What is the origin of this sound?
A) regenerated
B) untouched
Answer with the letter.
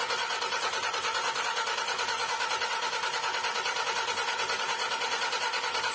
B